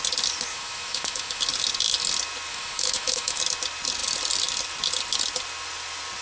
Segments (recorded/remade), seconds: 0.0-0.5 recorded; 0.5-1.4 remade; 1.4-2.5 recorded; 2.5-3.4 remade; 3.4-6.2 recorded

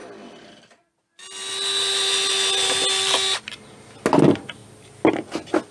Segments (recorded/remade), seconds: 0.0-5.7 recorded

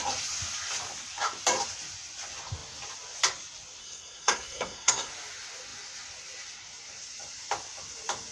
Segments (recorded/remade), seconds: 0.0-3.8 recorded; 3.8-5.1 remade; 5.1-8.3 recorded